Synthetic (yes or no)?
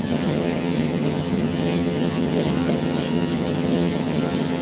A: yes